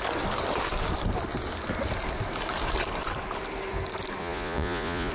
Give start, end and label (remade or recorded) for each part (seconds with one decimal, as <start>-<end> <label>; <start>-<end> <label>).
0.0-4.2 recorded; 4.2-5.1 remade